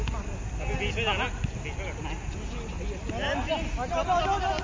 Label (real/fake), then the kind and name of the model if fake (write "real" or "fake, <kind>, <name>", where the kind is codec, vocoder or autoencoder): real